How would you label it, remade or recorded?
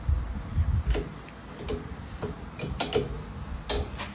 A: recorded